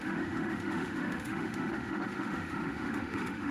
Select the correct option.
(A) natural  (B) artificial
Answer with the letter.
B